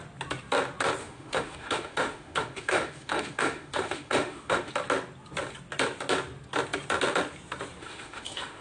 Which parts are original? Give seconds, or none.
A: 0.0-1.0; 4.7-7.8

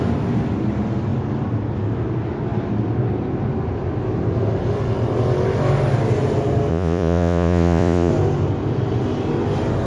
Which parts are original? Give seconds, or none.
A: 0.0-6.7; 8.1-9.9

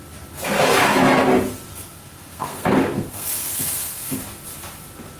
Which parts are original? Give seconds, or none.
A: 0.0-1.7; 4.2-5.2

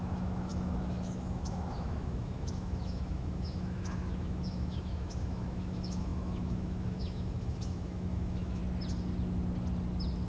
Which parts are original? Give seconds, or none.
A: 8.6-10.3

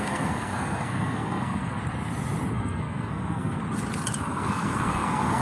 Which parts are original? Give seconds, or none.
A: 1.8-2.5; 3.6-4.2